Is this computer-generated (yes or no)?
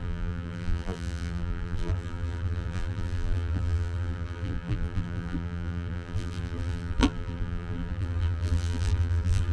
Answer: yes